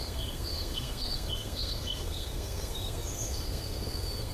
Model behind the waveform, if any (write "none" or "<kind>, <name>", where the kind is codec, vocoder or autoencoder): codec, SNAC